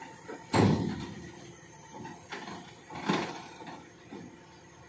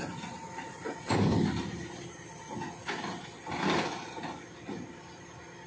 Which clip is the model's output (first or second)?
first